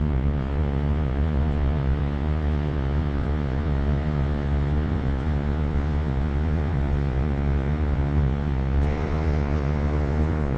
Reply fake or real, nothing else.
fake